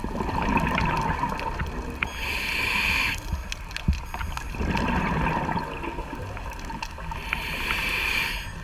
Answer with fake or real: real